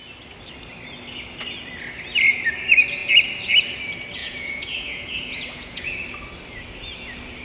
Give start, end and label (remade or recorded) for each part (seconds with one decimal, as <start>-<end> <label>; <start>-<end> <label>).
0.0-4.2 recorded; 4.2-5.9 remade; 5.9-7.4 recorded